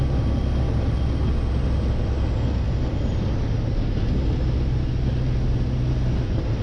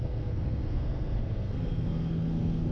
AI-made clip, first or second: second